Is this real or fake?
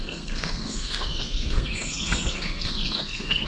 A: fake